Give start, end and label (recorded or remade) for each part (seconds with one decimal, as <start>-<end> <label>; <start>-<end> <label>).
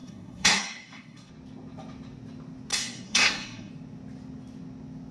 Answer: 0.0-1.3 remade; 1.3-2.7 recorded; 2.7-3.7 remade; 3.7-5.1 recorded